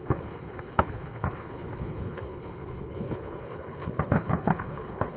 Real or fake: fake